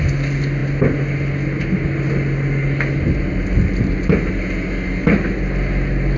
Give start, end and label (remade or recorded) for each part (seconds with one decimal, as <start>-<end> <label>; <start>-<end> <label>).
0.0-6.2 recorded